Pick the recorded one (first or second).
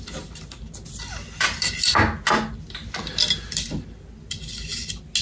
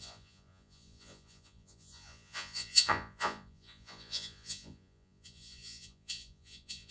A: first